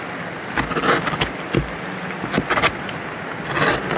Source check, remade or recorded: recorded